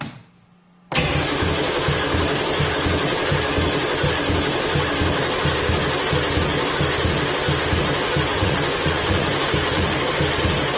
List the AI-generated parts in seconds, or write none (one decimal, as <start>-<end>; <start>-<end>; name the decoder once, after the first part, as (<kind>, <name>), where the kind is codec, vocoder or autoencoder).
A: 8.3-10.0 (vocoder, Vocos)